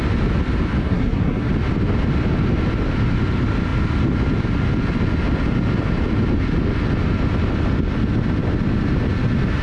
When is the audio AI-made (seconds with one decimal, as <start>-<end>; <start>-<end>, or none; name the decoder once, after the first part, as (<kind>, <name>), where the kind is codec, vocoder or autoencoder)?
0.8-1.5 (codec, SNAC)